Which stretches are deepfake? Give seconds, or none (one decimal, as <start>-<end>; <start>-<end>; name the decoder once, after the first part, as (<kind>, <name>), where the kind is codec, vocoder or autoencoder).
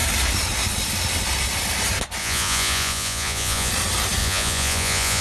2.2-3.7 (vocoder, Vocos); 4.2-5.2